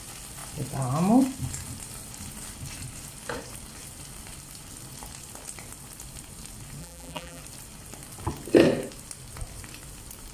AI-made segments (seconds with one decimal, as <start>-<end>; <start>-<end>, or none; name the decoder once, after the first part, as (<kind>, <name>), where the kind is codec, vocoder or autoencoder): 6.8-7.4 (vocoder, BigVGAN v2)